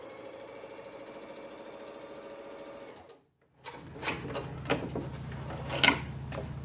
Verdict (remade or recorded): recorded